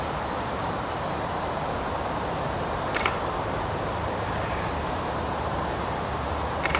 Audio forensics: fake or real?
fake